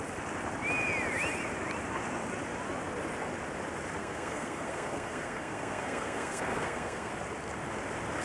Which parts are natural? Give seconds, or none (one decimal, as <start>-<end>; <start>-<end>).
0.0-4.0; 7.1-8.2